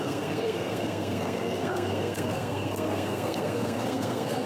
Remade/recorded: remade